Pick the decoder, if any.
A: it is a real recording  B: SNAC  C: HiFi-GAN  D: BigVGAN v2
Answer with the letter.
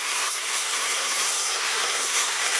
B